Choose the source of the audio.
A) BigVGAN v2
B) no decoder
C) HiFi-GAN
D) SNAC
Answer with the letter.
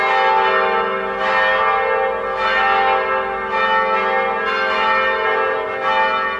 B